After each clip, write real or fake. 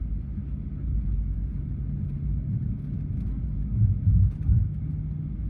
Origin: real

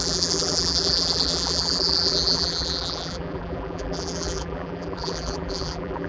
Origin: fake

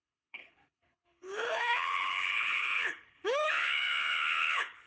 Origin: fake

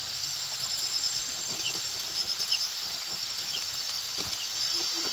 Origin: real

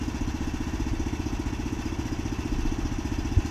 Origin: real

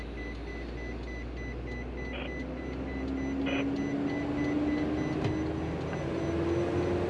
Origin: real